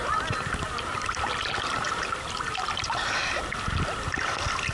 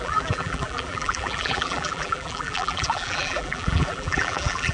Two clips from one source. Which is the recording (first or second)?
first